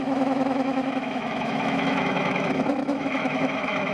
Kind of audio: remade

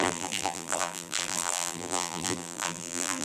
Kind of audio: remade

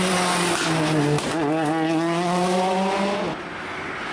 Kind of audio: recorded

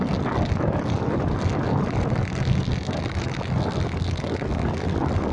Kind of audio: recorded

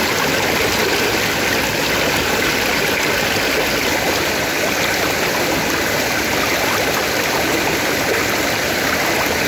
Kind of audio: recorded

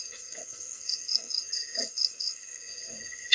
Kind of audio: remade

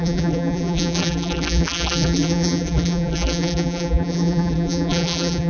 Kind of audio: remade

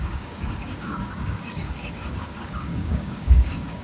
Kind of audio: remade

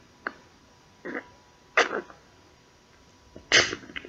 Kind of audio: recorded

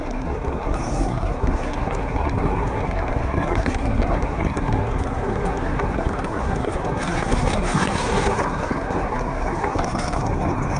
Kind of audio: remade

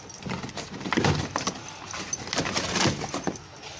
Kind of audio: recorded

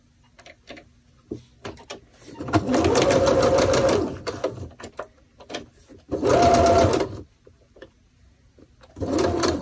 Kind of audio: recorded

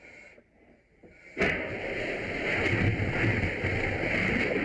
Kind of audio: recorded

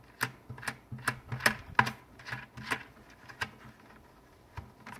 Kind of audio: recorded